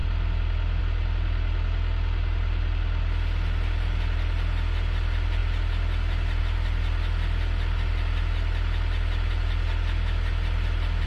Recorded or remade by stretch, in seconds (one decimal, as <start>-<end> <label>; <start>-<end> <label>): 0.0-11.1 recorded